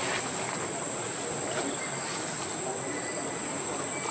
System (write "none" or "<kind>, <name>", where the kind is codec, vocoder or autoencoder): none